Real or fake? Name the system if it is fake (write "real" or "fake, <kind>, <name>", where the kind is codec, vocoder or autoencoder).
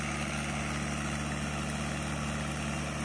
real